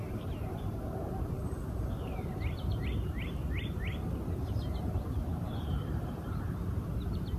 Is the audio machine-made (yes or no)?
yes